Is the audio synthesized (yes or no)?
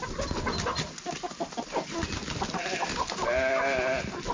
no